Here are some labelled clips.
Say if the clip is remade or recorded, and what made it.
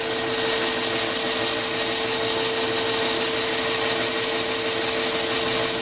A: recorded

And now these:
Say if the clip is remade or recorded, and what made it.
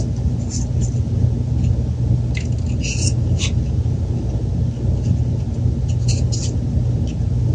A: recorded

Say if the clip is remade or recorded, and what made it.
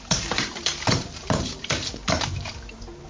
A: remade, vocoder, BigVGAN v2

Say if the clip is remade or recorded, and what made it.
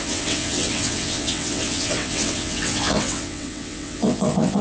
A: remade, vocoder, WaveNeXt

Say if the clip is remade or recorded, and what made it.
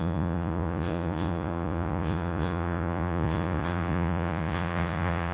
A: remade, vocoder, Vocos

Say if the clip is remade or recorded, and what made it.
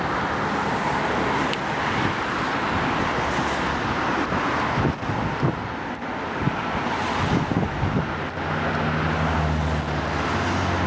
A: recorded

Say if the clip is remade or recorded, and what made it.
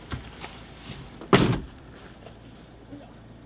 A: recorded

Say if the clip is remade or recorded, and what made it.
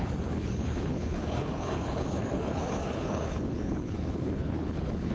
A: remade, codec, HILCodec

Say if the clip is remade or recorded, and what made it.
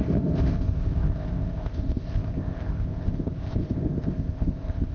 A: remade, codec, ZipCodec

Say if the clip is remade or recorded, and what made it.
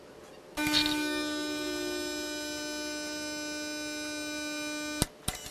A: recorded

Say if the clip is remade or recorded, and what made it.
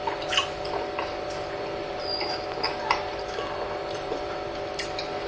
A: recorded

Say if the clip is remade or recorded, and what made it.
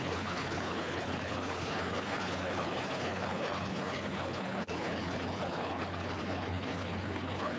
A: remade, codec, HILCodec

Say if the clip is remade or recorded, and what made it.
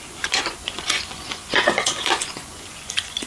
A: remade, vocoder, Vocos